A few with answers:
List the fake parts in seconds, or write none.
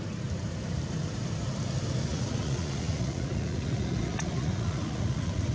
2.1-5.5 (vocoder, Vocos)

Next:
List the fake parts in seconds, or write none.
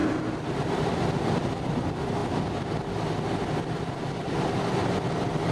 none